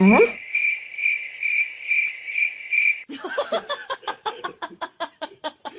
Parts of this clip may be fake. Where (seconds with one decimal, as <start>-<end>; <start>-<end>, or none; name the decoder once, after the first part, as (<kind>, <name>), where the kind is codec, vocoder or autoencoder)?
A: 3.8-5.8 (vocoder, Vocos)